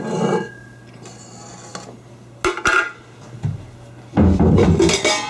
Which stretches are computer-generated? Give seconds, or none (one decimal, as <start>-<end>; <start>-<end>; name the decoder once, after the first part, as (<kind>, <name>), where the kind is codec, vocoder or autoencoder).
none